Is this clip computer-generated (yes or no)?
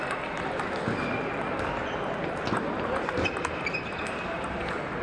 no